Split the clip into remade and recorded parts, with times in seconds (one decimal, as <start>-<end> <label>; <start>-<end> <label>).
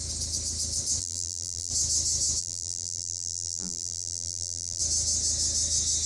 0.0-1.0 recorded; 1.0-1.7 remade; 1.7-2.4 recorded; 2.4-4.8 remade; 4.8-6.1 recorded